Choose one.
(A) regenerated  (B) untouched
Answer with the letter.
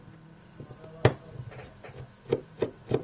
B